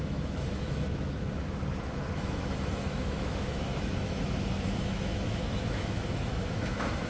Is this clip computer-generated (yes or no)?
yes